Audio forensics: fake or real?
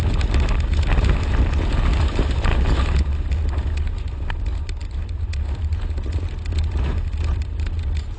real